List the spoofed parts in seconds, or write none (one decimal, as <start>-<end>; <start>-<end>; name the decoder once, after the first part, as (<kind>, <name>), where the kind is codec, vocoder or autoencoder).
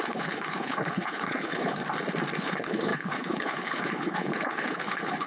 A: 0.0-1.8 (codec, HILCodec); 2.4-5.3